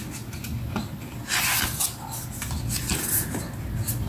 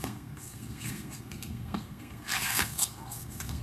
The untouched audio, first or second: first